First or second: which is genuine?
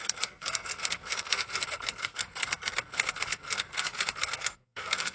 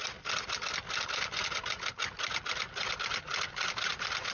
second